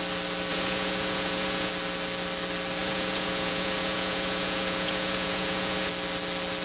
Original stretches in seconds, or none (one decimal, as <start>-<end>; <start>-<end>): 0.0-0.5; 1.7-2.8; 5.9-6.6